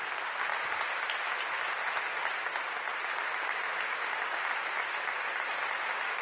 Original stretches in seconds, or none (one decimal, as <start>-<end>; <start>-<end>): 0.0-6.2